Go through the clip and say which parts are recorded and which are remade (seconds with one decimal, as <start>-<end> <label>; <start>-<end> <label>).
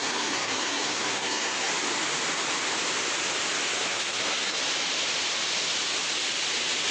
0.0-1.7 remade; 1.7-3.7 recorded; 3.7-4.6 remade; 4.6-6.9 recorded